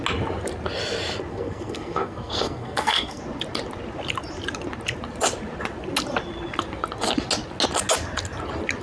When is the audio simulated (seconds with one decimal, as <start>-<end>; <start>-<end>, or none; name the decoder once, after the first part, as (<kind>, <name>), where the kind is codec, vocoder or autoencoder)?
1.3-3.2 (codec, SNAC)